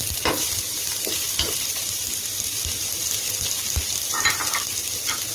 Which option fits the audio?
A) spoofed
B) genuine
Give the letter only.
A